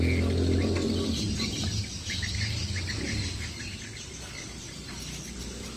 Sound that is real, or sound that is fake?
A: real